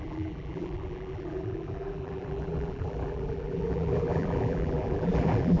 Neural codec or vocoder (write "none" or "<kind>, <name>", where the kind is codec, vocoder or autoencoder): vocoder, BigVGAN v2